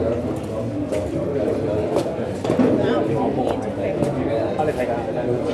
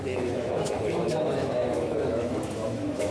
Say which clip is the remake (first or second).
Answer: second